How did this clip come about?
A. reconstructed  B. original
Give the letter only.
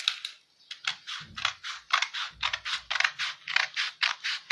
B